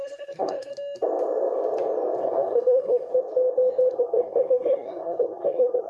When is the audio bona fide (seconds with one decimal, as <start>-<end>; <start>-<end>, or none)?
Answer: 0.7-2.2; 3.1-3.9